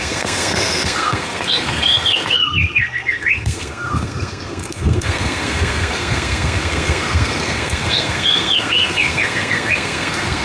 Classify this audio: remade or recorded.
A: remade